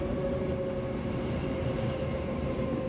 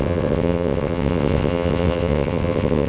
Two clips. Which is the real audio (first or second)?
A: first